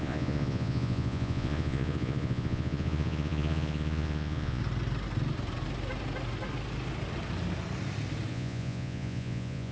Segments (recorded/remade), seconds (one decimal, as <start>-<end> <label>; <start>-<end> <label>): 0.0-4.6 remade; 4.6-8.3 recorded; 8.3-9.7 remade